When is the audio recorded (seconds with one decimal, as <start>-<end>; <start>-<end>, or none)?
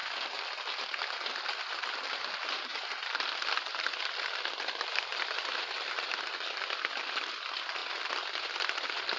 0.0-9.2